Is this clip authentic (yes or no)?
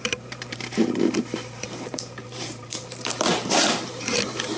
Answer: no